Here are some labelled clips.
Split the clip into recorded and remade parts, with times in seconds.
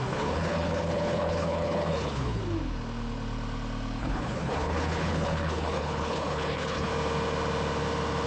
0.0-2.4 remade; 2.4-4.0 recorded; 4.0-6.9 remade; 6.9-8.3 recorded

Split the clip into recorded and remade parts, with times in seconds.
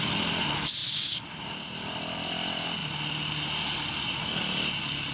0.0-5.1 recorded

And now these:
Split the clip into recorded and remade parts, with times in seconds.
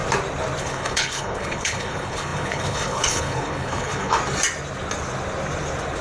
0.0-0.6 recorded; 0.6-4.2 remade; 4.2-6.0 recorded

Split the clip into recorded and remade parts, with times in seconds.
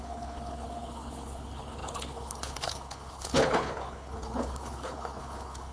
0.0-5.7 remade